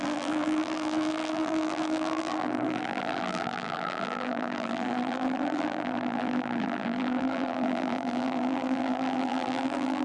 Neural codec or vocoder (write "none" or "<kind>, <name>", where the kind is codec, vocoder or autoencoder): vocoder, BigVGAN v2